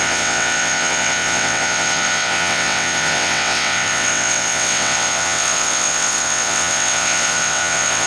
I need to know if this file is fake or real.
fake